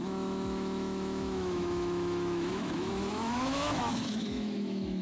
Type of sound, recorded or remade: remade